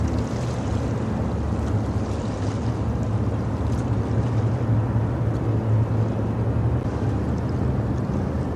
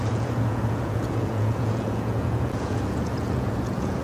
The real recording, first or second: first